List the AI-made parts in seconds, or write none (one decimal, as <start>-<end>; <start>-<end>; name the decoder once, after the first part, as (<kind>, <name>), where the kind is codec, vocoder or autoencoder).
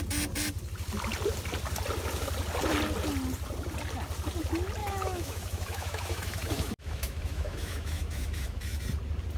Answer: 4.8-8.8 (autoencoder, DAC-VAE)